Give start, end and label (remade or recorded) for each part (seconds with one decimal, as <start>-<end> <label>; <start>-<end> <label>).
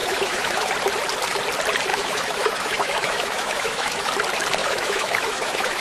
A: 0.0-0.7 remade; 0.7-1.9 recorded; 1.9-4.1 remade; 4.1-4.6 recorded; 4.6-5.8 remade